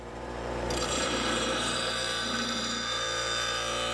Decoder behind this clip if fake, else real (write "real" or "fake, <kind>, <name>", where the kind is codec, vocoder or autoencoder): fake, vocoder, BigVGAN v2